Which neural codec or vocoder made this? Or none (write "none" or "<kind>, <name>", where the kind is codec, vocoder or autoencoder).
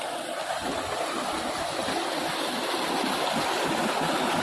none